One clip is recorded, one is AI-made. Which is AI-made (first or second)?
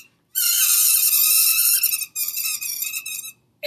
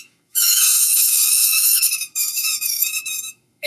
second